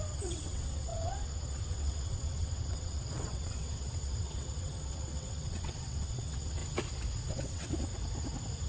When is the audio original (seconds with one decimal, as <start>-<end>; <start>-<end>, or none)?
6.6-7.3; 7.9-8.7